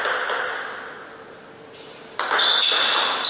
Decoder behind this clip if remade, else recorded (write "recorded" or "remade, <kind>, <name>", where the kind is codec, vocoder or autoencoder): recorded